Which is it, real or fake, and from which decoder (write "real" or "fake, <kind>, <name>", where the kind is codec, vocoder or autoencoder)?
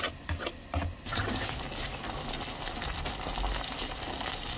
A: real